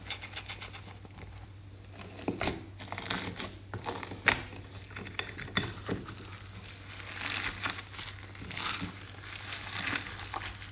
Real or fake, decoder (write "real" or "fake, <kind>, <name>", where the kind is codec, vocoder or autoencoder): real